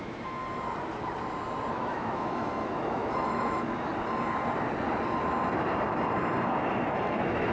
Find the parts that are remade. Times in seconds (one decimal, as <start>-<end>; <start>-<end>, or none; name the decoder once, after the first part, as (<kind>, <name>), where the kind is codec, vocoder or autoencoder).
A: 0.0-0.4 (autoencoder, DAC-VAE); 1.7-3.9; 7.0-7.5